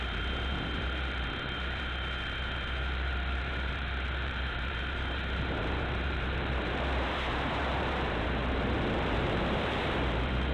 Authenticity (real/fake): fake